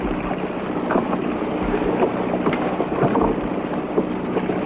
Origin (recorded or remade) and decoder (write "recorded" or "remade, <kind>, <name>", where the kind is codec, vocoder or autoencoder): recorded